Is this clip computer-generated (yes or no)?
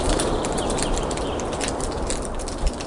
yes